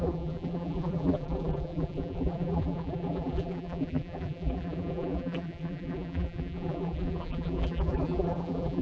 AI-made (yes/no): yes